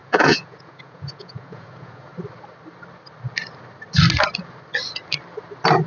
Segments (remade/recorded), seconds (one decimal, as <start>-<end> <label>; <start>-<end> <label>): 0.0-2.1 remade; 2.1-5.9 recorded